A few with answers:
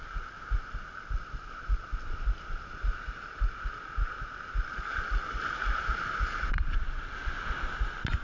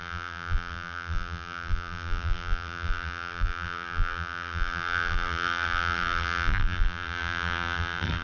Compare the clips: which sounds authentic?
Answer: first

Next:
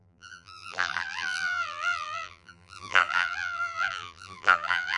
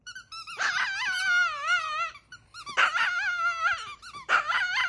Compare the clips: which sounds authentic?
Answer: second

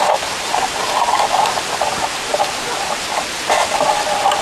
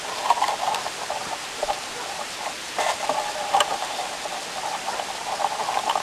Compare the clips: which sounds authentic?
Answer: first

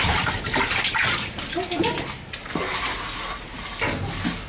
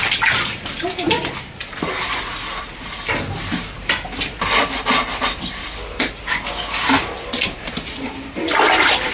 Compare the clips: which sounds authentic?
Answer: first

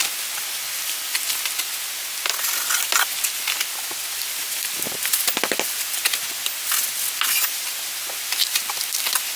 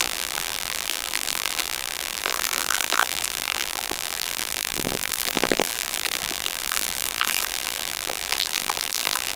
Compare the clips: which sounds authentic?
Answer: first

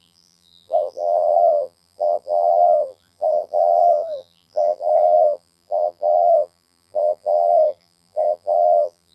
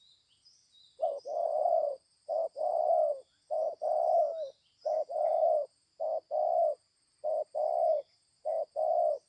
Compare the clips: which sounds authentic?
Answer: second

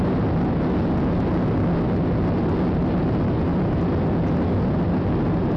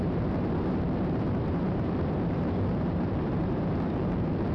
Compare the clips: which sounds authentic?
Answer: first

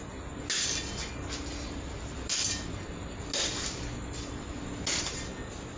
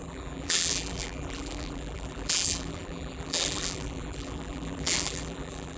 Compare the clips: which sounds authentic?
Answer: first